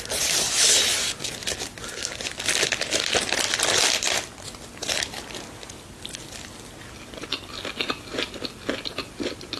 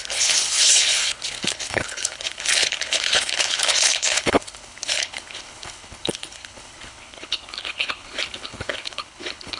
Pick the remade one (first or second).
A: second